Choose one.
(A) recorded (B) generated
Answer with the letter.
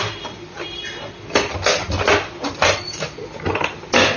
A